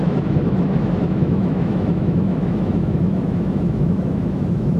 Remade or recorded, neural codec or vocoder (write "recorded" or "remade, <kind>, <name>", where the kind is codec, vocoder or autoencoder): remade, autoencoder, DAC-VAE